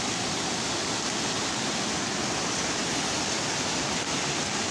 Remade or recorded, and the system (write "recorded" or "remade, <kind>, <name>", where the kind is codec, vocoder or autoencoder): recorded